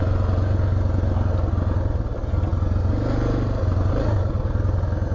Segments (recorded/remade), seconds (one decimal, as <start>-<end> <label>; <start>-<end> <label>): 0.0-5.1 recorded